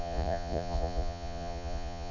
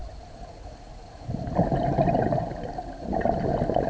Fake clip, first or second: first